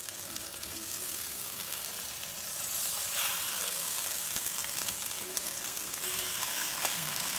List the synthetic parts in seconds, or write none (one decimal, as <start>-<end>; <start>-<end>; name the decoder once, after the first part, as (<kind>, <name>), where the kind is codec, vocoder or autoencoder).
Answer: 0.0-1.9 (codec, SNAC); 3.5-7.4